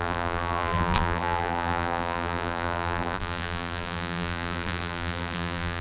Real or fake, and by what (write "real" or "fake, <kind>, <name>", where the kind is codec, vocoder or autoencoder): fake, vocoder, BigVGAN v2